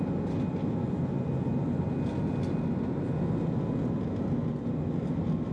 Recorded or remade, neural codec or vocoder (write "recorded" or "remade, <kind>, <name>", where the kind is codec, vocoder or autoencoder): recorded